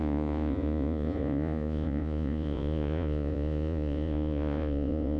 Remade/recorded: remade